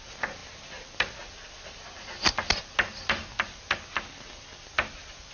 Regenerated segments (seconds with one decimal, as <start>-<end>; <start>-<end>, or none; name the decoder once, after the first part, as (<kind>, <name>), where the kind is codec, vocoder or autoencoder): none

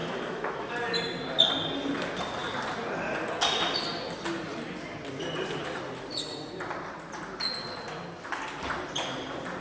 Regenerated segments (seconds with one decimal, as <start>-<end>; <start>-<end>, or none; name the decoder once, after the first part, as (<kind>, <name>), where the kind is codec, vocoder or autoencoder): 0.0-0.7 (autoencoder, DAC-VAE)

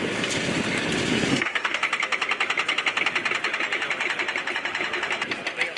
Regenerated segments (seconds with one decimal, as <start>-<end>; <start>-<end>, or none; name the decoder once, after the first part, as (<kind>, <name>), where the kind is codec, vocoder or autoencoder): 1.3-1.8 (codec, SNAC)

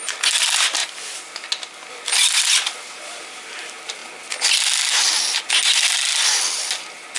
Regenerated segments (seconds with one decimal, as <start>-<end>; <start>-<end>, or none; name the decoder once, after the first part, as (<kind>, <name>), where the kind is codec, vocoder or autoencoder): none

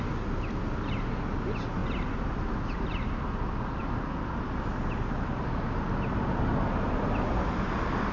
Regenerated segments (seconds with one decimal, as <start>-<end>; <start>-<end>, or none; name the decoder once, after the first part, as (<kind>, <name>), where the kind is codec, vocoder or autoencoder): none